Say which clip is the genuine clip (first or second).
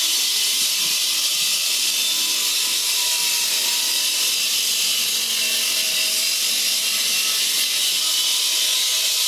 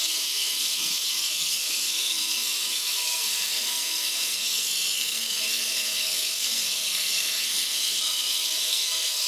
first